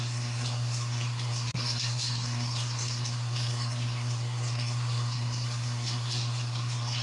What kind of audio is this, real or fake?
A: fake